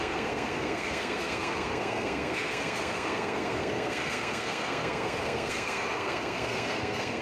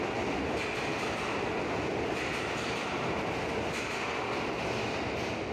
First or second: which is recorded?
second